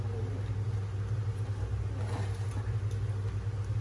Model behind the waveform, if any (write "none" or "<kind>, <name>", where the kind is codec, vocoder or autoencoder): none